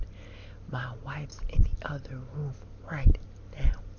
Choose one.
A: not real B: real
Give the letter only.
B